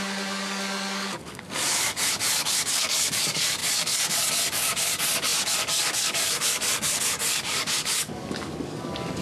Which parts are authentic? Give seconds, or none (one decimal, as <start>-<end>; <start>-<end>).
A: none